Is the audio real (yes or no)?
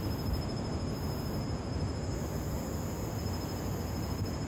yes